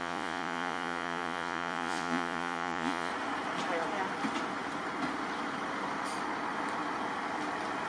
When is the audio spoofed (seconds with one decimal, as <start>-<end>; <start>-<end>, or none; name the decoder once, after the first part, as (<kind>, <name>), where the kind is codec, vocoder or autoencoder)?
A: 0.0-3.1 (vocoder, Vocos)